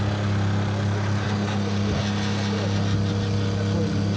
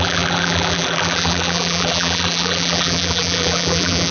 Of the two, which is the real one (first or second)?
first